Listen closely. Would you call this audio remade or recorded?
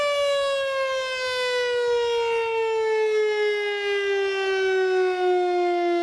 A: recorded